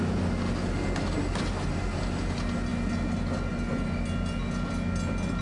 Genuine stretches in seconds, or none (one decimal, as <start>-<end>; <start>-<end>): 0.0-5.4